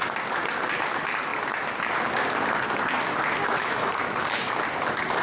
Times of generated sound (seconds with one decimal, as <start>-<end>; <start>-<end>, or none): 3.4-4.5

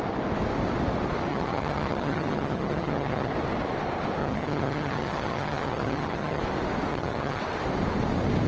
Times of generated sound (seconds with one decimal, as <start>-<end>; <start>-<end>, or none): 1.3-3.3; 4.2-6.4; 6.9-7.4

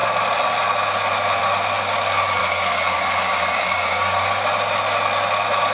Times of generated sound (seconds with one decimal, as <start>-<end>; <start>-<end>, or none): 2.4-4.5

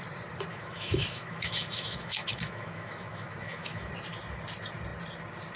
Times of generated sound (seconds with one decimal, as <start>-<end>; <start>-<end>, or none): 0.5-3.9

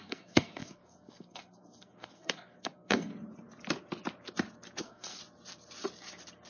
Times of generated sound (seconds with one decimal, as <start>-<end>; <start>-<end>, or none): 0.0-3.1; 4.8-5.2

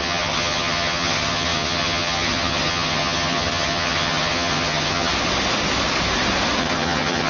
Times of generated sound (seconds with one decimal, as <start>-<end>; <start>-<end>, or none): 0.0-5.1; 6.6-7.3

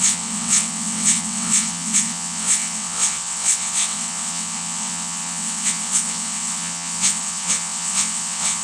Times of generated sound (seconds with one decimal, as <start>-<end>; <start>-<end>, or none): 0.0-8.6

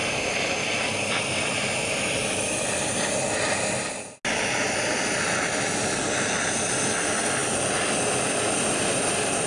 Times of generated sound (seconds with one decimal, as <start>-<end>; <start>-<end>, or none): 0.0-3.3; 7.4-8.5